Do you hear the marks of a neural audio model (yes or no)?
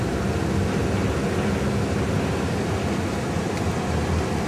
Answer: no